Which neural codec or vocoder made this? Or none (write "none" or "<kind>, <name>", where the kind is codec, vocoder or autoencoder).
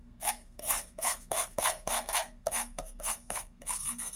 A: codec, SNAC